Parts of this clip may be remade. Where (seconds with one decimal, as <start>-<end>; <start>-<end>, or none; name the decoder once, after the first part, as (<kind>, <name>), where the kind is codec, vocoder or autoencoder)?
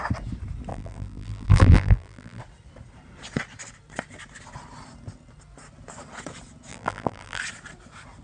0.7-2.4 (vocoder, BigVGAN v2); 6.7-7.4